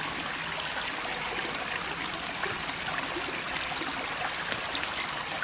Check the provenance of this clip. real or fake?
real